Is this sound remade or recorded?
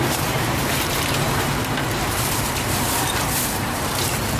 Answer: remade